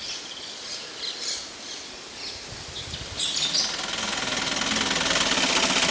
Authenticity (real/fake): real